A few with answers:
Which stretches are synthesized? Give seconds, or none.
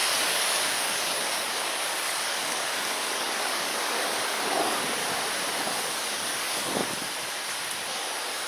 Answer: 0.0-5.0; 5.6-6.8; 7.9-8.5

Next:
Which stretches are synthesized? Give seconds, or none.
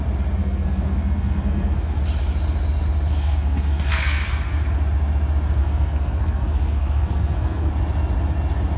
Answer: 0.4-2.0; 3.1-4.3; 5.6-7.7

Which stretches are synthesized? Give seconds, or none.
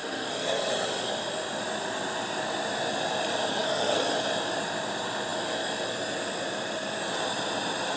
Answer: 0.0-0.7; 3.5-4.1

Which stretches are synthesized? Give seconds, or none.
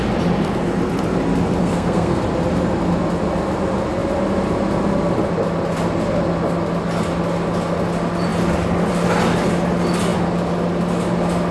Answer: 1.6-2.2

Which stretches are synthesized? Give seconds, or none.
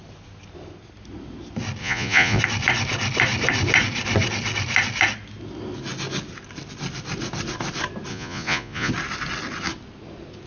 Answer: 1.8-2.4; 8.1-8.9